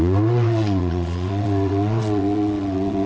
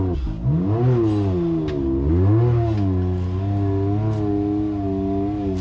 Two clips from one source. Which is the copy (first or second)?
first